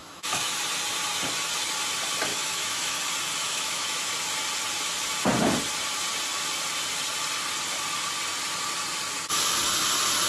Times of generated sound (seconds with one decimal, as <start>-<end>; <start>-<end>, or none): 0.0-0.6; 2.3-3.0; 3.4-4.1

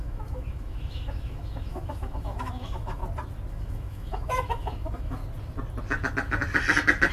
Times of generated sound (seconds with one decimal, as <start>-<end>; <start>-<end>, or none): 0.0-3.0; 3.5-5.2

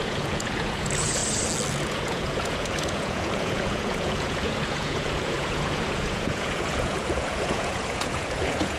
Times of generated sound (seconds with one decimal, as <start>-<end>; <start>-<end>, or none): 0.0-1.2; 1.7-8.8

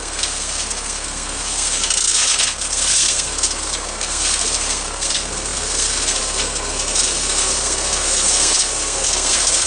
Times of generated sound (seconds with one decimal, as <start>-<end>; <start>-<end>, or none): 0.0-9.7

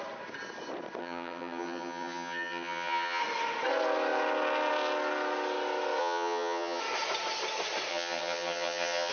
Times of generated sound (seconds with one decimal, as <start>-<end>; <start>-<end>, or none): 1.0-3.2; 6.0-6.8; 7.9-9.1

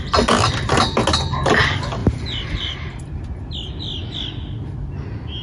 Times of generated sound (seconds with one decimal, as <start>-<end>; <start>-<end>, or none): 2.0-3.0

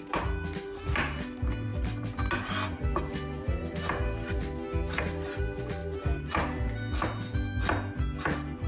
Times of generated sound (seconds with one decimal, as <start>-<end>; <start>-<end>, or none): none